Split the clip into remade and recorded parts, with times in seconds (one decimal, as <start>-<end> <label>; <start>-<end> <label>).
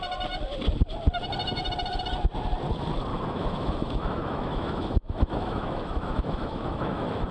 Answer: 0.0-3.1 recorded; 3.1-7.3 remade